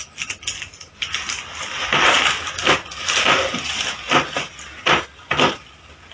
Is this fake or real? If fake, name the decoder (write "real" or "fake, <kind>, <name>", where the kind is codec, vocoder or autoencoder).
real